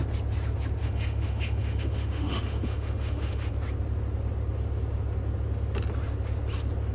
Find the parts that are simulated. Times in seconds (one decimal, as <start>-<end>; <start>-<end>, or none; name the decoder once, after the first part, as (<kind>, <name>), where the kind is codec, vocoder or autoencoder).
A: 0.8-3.5 (autoencoder, DAC-VAE)

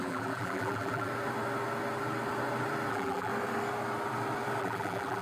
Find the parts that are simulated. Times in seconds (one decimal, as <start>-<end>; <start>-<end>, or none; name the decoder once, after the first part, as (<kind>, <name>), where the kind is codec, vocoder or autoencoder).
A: 0.0-1.1 (vocoder, BigVGAN v2); 2.9-3.3; 4.6-5.2